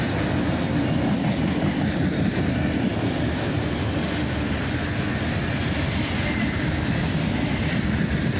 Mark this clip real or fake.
real